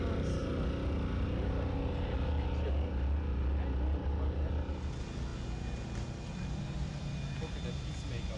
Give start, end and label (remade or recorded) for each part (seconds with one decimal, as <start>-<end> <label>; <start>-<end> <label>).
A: 0.0-0.4 remade; 0.4-4.7 recorded; 4.7-5.3 remade; 5.3-6.3 recorded; 6.3-8.4 remade